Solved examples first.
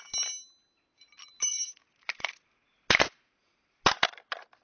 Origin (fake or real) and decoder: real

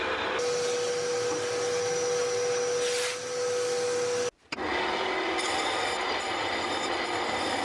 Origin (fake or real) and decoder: real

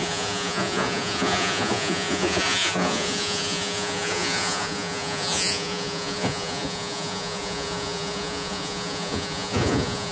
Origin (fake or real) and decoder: fake, vocoder, Vocos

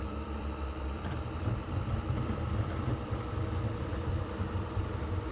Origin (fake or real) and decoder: fake, vocoder, BigVGAN v2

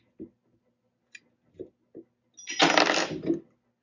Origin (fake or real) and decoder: real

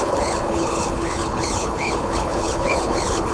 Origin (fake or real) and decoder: fake, codec, HILCodec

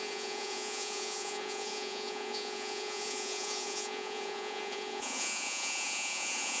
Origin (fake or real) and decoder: fake, vocoder, Vocos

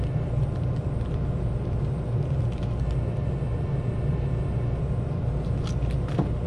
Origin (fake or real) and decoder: real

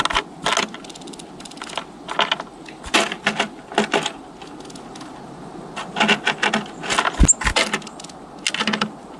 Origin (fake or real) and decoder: real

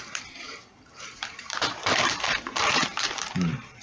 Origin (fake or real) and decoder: fake, vocoder, BigVGAN v2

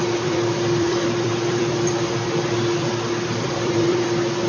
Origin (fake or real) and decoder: fake, vocoder, BigVGAN v2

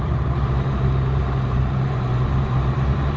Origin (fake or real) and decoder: fake, vocoder, BigVGAN v2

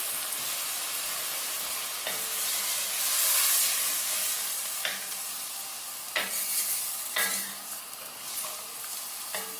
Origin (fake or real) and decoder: real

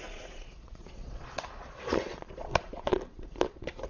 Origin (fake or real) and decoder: fake, vocoder, Vocos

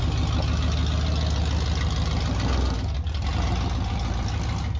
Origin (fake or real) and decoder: real